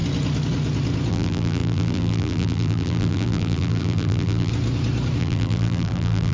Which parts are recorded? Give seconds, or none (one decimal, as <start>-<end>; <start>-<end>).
0.0-1.1; 4.5-5.2

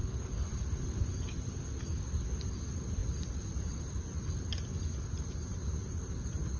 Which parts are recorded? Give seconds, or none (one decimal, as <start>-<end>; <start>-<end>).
0.0-6.6